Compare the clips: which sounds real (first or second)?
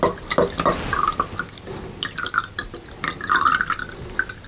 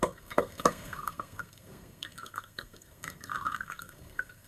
first